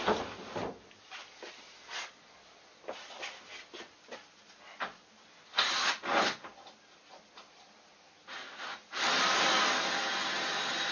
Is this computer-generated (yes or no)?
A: no